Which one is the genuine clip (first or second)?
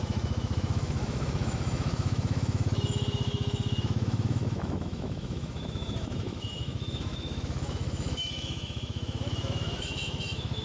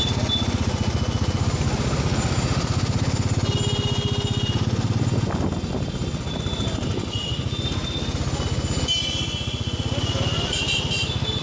second